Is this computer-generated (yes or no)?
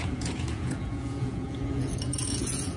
yes